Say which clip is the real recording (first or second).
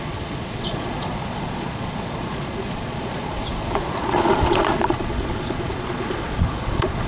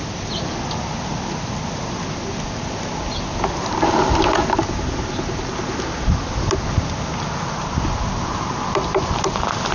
second